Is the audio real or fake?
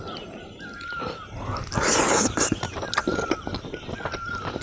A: real